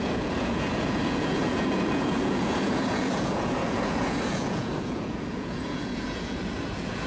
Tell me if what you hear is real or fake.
fake